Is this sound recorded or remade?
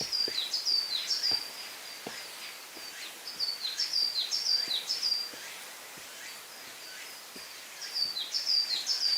recorded